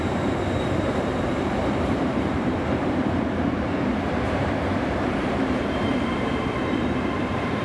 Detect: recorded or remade remade